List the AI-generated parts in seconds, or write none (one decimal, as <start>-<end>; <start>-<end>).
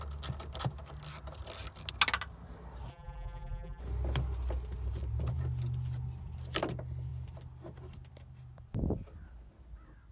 2.9-3.8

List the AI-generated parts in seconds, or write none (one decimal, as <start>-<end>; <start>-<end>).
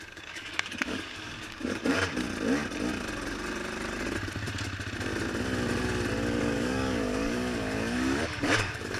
0.0-1.9; 6.4-9.0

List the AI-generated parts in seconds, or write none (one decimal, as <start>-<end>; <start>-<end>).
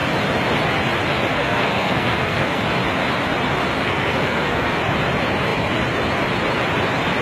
1.3-2.6; 3.8-4.8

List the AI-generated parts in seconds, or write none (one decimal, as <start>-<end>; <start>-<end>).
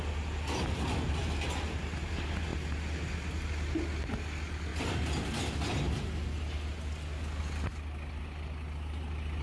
none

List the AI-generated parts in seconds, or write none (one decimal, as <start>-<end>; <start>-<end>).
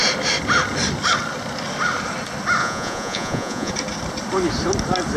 2.6-3.7